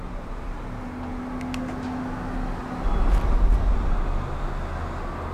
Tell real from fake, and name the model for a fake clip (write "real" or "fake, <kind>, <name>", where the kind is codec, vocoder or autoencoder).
real